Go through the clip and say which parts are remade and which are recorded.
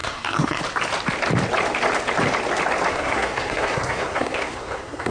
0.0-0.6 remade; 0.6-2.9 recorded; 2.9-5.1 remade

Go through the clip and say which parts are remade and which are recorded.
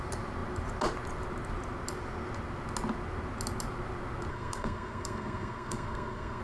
0.0-4.3 recorded; 4.3-6.4 remade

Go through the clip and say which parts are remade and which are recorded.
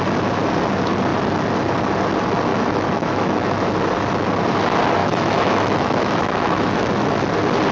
0.0-2.5 recorded; 2.5-3.6 remade; 3.6-5.0 recorded; 5.0-6.9 remade; 6.9-7.7 recorded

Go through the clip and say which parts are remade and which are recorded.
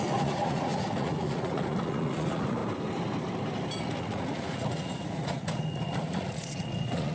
0.0-2.6 remade; 2.6-3.8 recorded; 3.8-7.1 remade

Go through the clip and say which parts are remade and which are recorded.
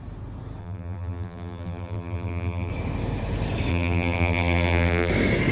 0.0-0.6 recorded; 0.6-2.7 remade; 2.7-3.7 recorded; 3.7-5.1 remade; 5.1-5.5 recorded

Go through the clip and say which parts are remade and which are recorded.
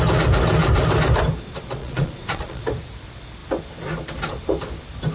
0.0-1.8 recorded; 1.8-2.6 remade; 2.6-5.1 recorded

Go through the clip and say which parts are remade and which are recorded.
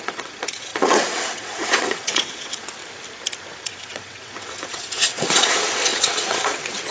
0.0-2.8 remade; 2.8-3.6 recorded; 3.6-6.9 remade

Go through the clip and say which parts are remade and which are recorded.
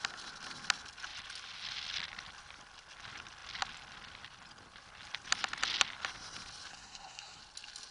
0.0-6.7 recorded; 6.7-7.4 remade; 7.4-7.9 recorded